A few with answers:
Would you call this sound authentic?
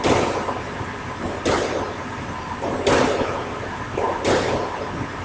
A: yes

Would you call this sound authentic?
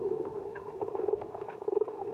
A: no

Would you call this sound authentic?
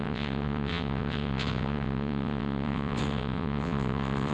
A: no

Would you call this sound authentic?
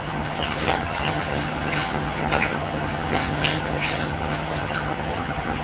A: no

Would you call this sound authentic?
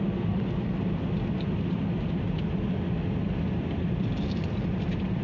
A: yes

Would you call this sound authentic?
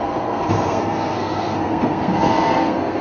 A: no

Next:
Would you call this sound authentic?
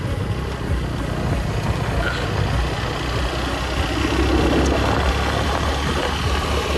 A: yes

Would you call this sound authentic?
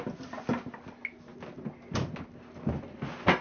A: yes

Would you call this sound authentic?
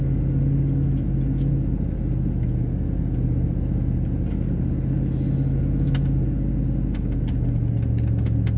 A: yes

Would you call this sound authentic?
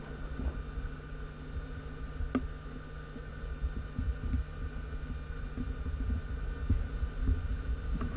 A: yes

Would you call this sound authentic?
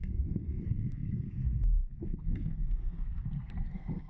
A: no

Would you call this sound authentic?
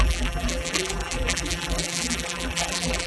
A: no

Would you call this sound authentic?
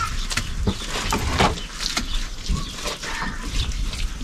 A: yes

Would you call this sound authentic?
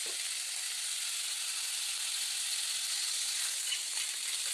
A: yes